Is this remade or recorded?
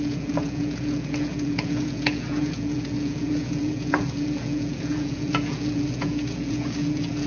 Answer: remade